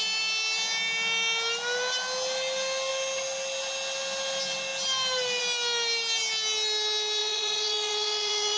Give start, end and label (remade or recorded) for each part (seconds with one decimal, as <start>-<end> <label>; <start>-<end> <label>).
0.0-7.2 recorded; 7.2-8.6 remade